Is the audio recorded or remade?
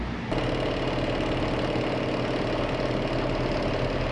recorded